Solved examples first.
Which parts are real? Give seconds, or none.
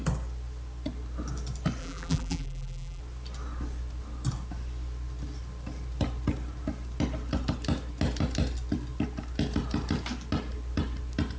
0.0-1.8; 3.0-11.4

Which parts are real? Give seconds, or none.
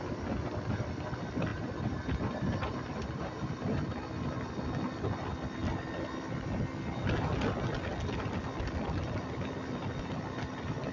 0.0-1.5; 3.8-10.9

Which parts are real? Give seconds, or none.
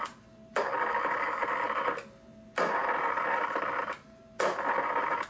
0.0-2.8; 4.7-5.3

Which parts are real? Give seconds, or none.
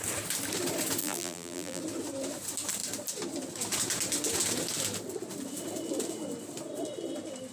0.0-1.0; 1.8-7.5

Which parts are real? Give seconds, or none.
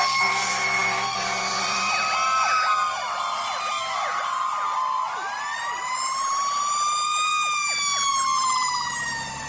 7.3-8.1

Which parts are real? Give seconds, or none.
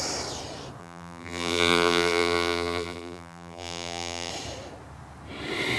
0.0-0.8; 4.3-5.8